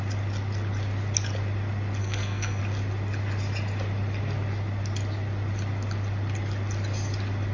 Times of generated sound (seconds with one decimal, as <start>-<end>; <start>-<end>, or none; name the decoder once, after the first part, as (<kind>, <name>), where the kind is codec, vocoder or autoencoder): 2.0-2.6 (codec, SNAC)